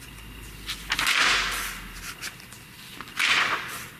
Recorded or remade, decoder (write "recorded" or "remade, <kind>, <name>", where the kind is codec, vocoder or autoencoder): recorded